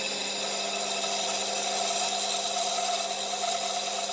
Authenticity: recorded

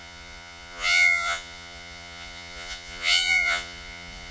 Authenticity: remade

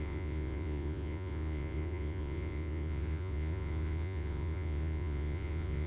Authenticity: remade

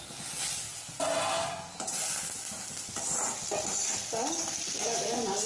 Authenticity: recorded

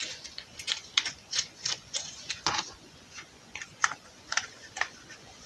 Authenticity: remade